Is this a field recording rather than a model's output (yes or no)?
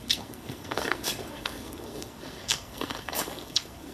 no